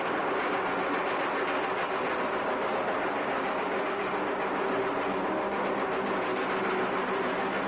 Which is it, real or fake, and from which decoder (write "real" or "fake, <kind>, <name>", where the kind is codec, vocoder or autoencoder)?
real